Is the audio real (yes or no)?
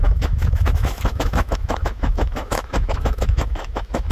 no